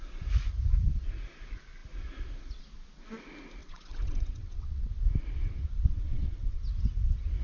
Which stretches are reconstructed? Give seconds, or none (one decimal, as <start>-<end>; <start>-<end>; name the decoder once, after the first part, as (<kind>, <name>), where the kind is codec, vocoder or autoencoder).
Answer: 3.6-4.9 (vocoder, WaveNeXt); 5.4-6.6